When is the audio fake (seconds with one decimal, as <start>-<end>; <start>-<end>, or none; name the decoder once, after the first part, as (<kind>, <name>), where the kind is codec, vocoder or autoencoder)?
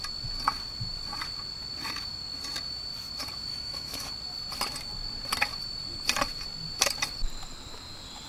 3.5-4.1 (autoencoder, DAC-VAE)